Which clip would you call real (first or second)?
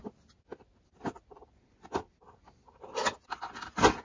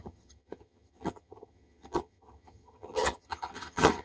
first